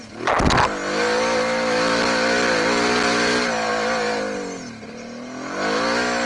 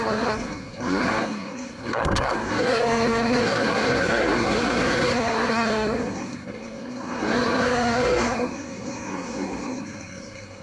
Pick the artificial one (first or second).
second